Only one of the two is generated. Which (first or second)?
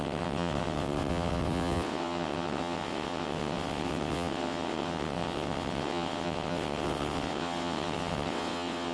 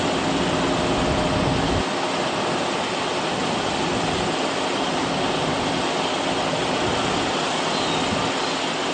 first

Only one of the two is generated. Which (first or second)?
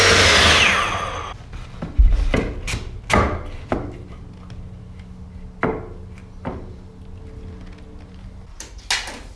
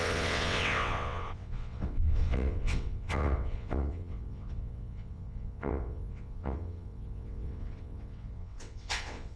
second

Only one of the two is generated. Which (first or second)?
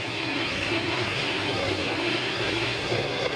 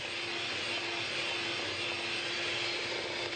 first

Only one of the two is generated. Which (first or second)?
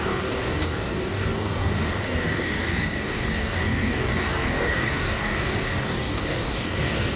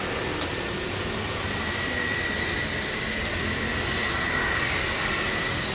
first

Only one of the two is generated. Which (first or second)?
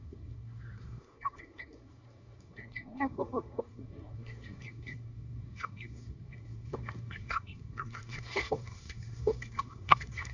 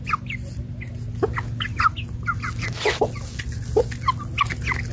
first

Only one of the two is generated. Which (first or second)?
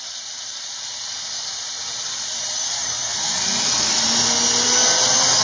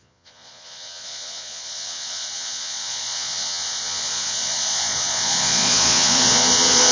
second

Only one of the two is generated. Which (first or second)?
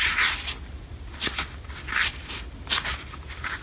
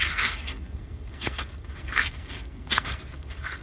second